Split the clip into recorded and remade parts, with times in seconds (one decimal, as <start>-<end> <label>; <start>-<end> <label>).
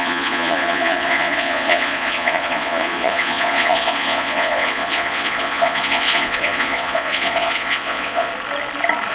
0.0-8.3 remade; 8.3-9.1 recorded